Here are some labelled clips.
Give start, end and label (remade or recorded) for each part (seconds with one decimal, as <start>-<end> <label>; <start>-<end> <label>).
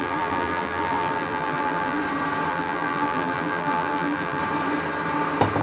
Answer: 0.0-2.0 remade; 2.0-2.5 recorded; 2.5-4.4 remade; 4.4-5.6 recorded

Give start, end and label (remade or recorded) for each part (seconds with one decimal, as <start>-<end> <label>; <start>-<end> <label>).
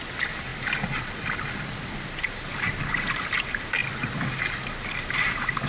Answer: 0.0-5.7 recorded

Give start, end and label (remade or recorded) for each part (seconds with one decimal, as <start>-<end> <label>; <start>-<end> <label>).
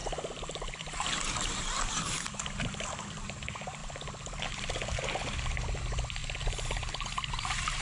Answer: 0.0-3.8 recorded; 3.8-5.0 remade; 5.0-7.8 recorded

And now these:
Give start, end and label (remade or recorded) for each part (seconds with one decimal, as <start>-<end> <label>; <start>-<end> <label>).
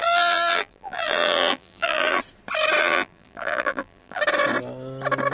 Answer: 0.0-2.2 remade; 2.2-2.8 recorded; 2.8-4.2 remade; 4.2-5.3 recorded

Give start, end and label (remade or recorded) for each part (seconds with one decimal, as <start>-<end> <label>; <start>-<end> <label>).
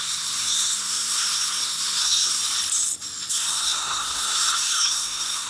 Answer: 0.0-2.4 remade; 2.4-3.3 recorded; 3.3-5.5 remade